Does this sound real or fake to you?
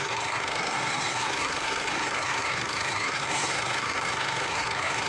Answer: fake